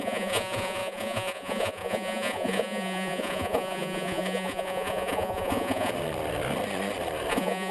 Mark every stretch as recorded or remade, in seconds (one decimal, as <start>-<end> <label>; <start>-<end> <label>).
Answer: 0.0-5.9 remade; 5.9-7.3 recorded; 7.3-7.7 remade